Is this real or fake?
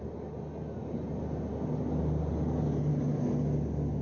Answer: real